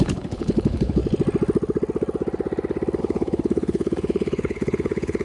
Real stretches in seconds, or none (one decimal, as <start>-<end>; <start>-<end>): 1.0-3.0